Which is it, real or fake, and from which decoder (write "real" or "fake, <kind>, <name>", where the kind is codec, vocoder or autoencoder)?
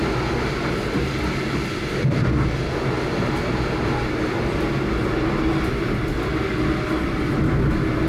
real